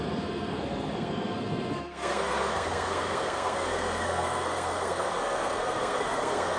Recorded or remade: remade